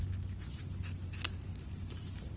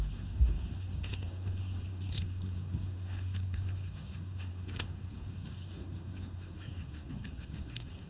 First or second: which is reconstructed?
second